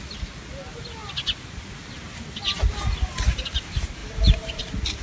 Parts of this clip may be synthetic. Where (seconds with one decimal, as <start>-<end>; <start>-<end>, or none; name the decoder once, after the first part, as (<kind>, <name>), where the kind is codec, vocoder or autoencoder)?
4.0-4.6 (vocoder, BigVGAN v2)